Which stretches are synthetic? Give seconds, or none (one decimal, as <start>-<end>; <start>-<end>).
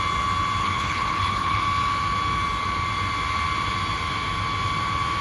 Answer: 0.6-1.6